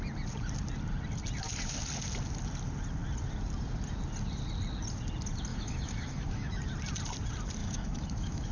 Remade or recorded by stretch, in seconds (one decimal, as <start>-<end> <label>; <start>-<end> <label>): 0.0-5.5 recorded; 5.5-6.6 remade; 6.6-7.6 recorded; 7.6-8.5 remade